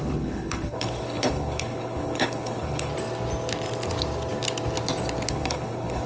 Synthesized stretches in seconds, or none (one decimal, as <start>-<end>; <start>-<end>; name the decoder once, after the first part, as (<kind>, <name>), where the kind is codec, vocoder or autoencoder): 0.0-2.9 (codec, HILCodec); 5.3-6.1